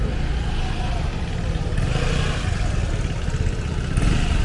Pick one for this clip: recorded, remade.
recorded